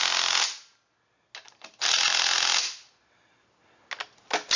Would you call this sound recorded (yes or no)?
yes